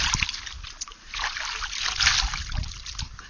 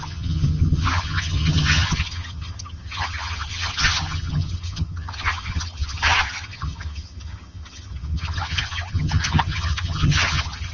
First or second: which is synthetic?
second